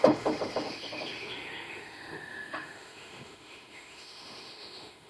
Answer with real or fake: fake